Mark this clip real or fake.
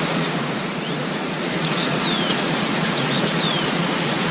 fake